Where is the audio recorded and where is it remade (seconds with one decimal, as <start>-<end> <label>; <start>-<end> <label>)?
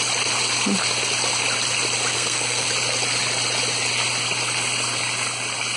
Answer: 0.0-2.1 recorded; 2.1-2.7 remade; 2.7-5.8 recorded